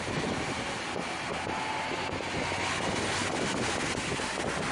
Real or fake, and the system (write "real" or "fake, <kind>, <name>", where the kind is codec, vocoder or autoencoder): real